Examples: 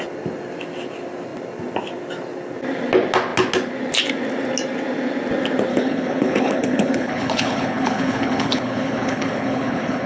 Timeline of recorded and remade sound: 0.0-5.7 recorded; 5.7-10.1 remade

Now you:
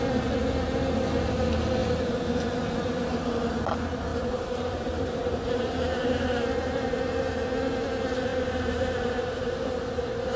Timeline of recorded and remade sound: 0.0-4.1 recorded; 4.1-7.3 remade; 7.3-8.3 recorded; 8.3-10.4 remade

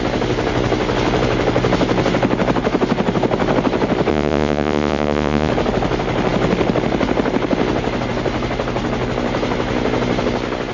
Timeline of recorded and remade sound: 0.0-4.1 recorded; 4.1-5.5 remade; 5.5-10.7 recorded

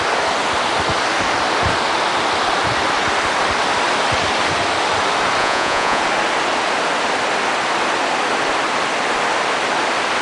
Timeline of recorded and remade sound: 0.0-5.4 recorded; 5.4-6.0 remade; 6.0-10.2 recorded

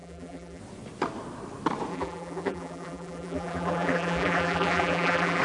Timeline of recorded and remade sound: 0.0-0.6 remade; 0.6-1.9 recorded; 1.9-5.4 remade

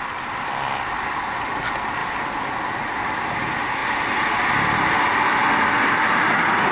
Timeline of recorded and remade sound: 0.0-6.7 recorded

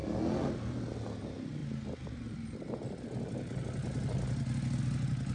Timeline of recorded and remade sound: 0.0-5.3 recorded